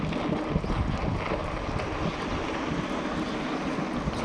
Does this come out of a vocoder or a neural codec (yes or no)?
no